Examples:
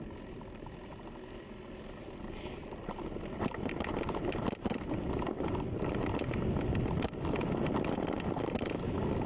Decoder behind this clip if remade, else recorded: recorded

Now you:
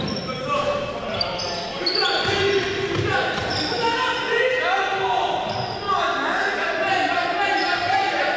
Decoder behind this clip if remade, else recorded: recorded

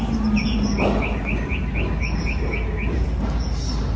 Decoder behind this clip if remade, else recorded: recorded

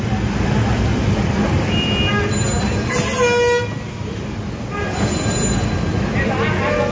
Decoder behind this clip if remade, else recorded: recorded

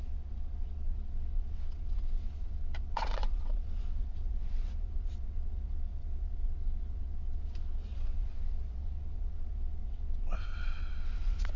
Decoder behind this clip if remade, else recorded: remade, vocoder, WaveNeXt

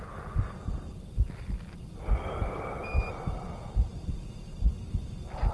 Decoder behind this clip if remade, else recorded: recorded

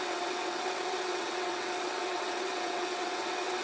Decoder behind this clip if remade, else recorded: remade, vocoder, WaveNeXt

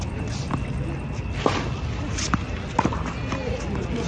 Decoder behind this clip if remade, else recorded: recorded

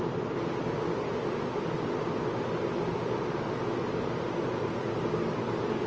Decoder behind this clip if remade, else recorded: recorded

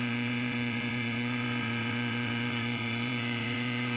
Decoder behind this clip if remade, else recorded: remade, vocoder, WaveNeXt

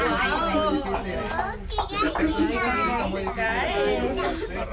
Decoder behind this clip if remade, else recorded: recorded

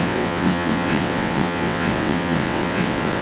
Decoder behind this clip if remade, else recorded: remade, vocoder, WaveNeXt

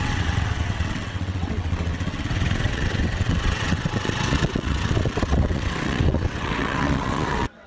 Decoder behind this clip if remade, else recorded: remade, vocoder, WaveNeXt